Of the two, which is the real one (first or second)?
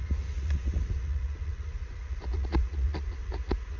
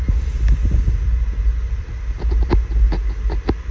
second